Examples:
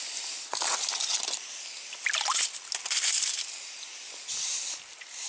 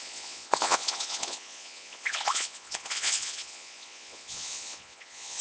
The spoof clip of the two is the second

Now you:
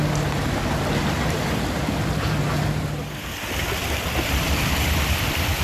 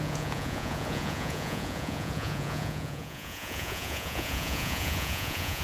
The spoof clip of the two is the second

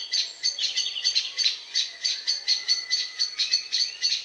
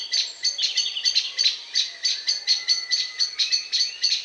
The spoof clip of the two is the first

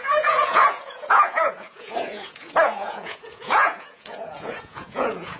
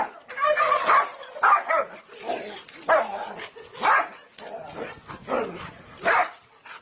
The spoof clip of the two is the first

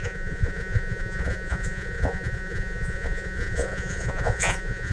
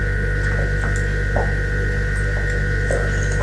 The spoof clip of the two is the first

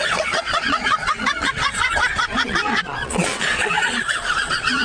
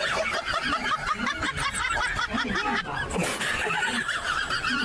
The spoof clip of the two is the first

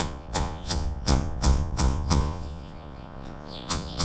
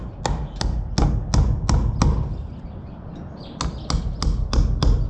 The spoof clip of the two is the first